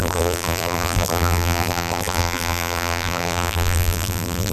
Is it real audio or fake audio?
fake